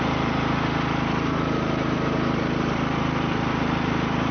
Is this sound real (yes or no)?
no